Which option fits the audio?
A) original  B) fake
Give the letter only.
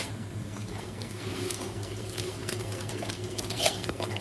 B